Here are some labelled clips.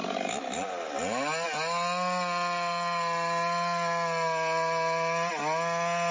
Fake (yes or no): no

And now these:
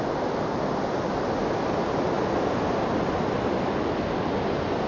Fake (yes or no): no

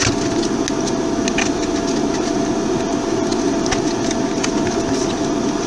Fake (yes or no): no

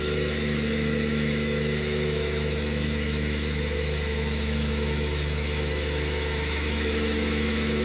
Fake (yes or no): yes